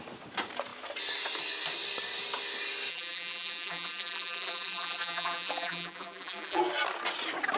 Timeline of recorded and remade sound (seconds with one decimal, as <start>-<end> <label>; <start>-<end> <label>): 0.0-2.9 recorded; 2.9-6.6 remade; 6.6-7.6 recorded